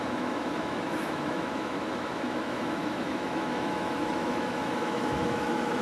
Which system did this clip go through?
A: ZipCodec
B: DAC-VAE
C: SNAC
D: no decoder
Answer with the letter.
B